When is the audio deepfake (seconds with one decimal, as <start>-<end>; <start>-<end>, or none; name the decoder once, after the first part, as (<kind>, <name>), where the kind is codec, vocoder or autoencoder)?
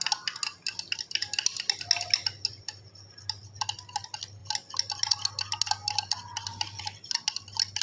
none